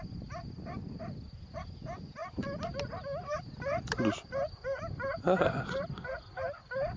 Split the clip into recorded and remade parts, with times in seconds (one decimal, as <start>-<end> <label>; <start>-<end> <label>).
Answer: 0.0-7.0 recorded

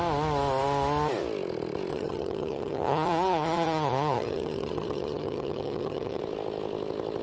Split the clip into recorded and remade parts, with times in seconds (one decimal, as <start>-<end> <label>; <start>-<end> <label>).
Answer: 0.0-1.9 recorded; 1.9-6.2 remade; 6.2-7.2 recorded

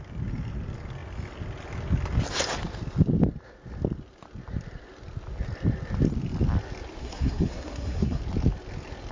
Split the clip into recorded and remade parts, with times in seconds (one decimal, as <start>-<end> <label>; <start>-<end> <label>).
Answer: 0.0-7.0 recorded; 7.0-8.2 remade; 8.2-9.1 recorded